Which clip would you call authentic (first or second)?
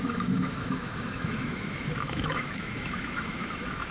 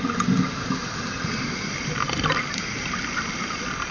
second